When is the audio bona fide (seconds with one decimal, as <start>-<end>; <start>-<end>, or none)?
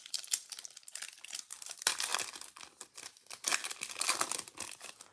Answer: none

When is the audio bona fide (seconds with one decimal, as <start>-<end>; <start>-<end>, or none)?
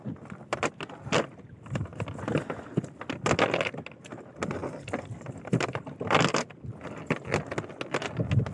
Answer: 0.0-8.5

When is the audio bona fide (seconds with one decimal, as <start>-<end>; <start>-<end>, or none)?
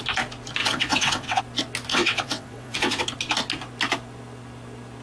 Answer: 0.0-0.6; 1.4-1.9; 3.0-5.0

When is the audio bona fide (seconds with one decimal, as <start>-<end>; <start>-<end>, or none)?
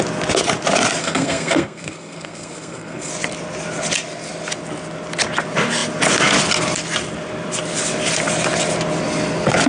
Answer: 0.0-1.0; 3.1-9.7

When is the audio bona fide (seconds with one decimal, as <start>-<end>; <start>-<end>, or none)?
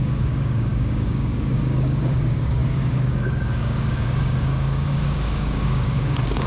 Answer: none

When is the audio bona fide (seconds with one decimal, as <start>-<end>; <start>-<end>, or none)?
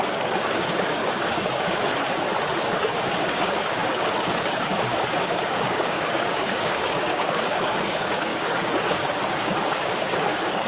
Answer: 1.9-2.6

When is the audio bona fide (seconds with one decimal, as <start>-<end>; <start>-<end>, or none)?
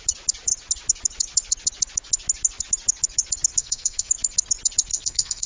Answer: 0.0-3.6; 4.1-4.9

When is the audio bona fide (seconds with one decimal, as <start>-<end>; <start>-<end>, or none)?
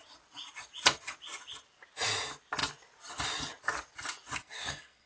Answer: 0.0-4.4